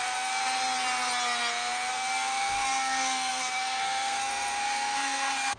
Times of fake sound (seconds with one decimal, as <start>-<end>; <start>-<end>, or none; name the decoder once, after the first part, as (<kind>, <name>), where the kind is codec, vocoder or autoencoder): 0.0-0.4 (codec, SNAC); 1.9-5.6